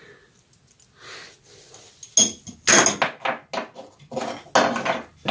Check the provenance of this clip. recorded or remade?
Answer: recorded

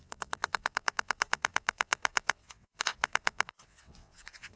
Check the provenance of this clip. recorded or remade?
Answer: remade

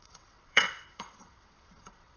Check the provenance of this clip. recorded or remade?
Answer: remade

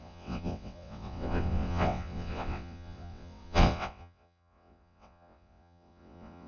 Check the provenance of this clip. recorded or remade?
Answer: remade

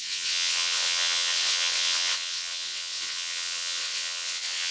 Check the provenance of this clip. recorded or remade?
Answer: remade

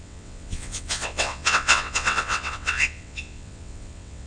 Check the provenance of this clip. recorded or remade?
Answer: remade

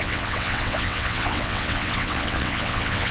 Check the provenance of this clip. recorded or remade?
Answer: remade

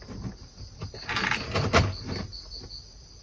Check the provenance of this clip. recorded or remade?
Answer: recorded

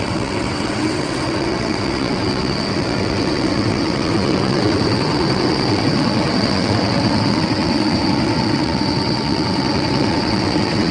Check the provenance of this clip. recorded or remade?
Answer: remade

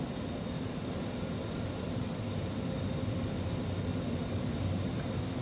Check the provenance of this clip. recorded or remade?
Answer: recorded